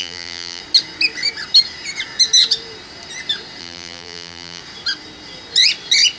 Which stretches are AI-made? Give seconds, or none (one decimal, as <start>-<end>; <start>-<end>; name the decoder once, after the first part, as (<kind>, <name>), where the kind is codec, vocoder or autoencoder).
0.0-0.6 (vocoder, BigVGAN v2); 3.6-4.6